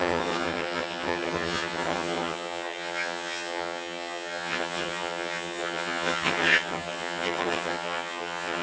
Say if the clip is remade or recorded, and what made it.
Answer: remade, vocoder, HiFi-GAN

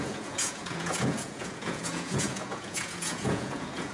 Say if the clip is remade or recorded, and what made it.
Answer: remade, vocoder, Vocos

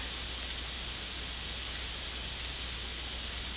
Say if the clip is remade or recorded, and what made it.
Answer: recorded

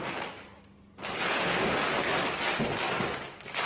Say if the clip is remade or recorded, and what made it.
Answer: recorded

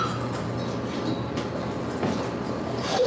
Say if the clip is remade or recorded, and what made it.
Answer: recorded